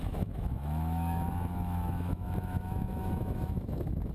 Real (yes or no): no